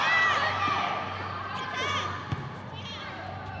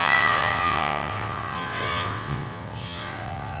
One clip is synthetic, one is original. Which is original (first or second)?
first